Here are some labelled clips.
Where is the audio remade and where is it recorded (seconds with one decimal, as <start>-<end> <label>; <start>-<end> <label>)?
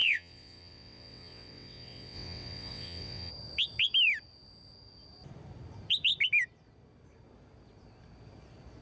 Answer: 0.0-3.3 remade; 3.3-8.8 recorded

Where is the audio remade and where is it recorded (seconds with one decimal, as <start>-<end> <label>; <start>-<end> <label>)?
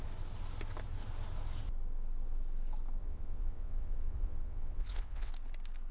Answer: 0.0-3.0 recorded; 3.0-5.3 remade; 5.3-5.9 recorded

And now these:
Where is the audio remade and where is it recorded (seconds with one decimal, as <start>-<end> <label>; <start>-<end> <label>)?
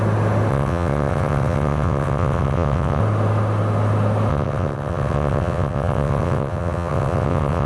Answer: 0.0-0.5 recorded; 0.5-3.0 remade; 3.0-4.3 recorded; 4.3-7.7 remade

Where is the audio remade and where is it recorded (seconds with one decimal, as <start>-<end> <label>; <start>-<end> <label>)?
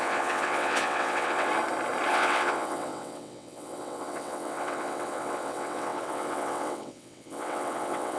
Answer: 0.0-1.5 remade; 1.5-2.1 recorded; 2.1-8.2 remade